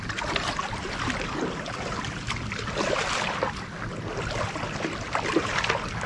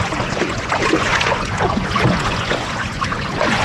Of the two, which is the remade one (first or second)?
second